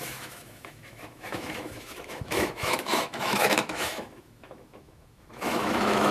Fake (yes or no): yes